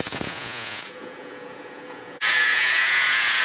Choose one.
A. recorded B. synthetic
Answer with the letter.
B